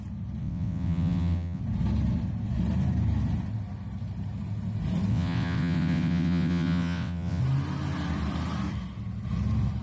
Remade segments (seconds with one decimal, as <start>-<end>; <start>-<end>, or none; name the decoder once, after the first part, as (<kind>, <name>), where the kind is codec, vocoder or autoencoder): 0.4-1.6 (vocoder, WaveNeXt); 5.1-7.4